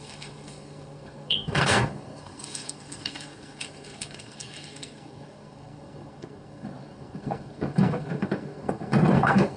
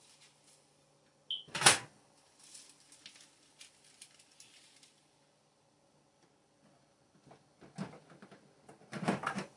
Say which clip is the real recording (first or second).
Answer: second